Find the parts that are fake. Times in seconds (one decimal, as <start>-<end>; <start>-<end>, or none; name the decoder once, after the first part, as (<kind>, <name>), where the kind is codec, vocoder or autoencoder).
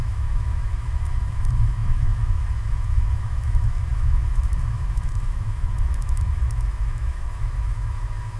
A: 0.0-8.4 (autoencoder, DAC-VAE)